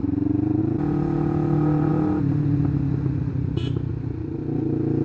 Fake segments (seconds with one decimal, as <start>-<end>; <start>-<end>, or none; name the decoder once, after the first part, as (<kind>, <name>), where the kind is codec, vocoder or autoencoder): none